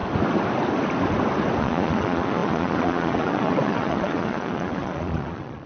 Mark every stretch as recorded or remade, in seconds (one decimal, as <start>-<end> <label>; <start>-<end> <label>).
0.0-1.6 recorded; 1.6-5.7 remade